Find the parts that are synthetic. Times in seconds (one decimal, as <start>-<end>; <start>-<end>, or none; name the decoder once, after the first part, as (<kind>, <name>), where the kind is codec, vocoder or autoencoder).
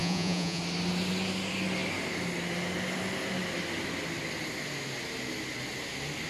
0.0-0.6 (vocoder, Vocos)